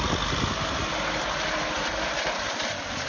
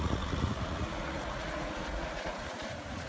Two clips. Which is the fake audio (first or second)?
second